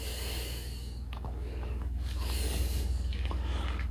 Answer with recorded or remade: remade